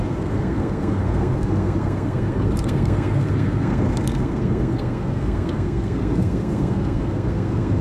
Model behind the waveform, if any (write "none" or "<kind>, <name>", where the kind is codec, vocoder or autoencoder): codec, SNAC